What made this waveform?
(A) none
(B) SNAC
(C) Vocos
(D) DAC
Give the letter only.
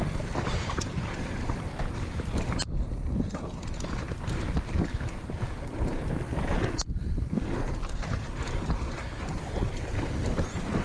A